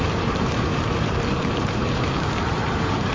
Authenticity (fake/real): fake